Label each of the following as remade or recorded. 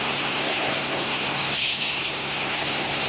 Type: remade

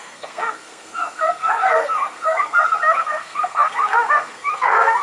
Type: remade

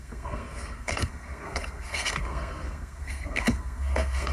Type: remade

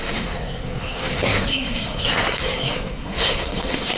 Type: remade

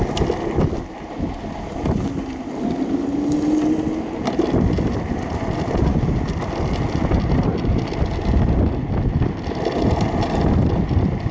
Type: recorded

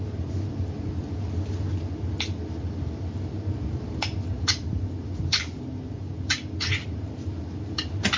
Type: recorded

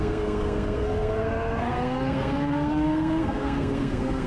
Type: remade